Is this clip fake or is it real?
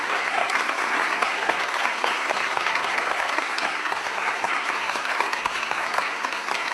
fake